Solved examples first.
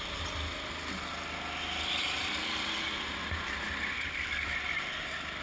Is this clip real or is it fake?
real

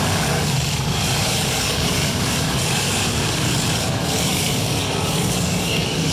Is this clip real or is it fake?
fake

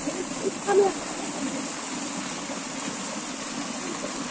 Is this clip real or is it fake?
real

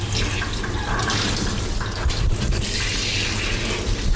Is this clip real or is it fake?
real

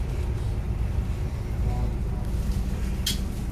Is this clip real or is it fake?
real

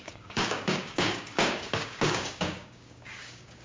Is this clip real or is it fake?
fake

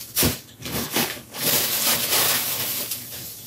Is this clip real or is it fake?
fake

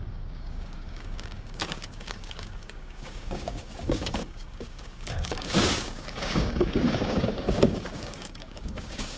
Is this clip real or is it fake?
fake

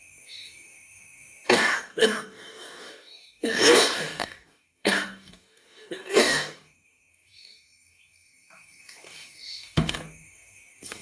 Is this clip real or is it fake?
fake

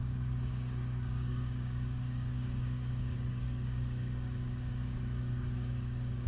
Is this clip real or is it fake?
fake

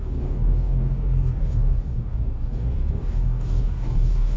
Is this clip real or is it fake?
fake